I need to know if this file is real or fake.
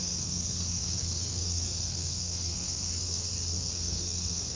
fake